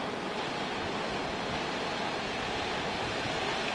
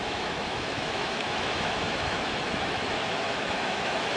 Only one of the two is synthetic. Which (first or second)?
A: second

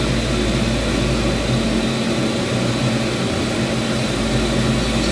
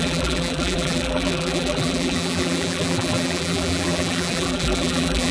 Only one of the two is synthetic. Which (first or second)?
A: second